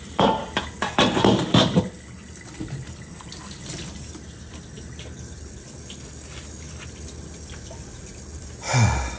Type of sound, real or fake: real